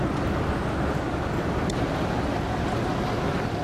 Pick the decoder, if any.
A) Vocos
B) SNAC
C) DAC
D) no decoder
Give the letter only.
D